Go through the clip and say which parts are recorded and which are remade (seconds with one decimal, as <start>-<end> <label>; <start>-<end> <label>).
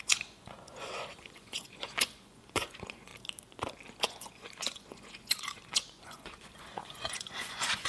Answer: 0.0-3.1 remade; 3.1-4.0 recorded; 4.0-7.9 remade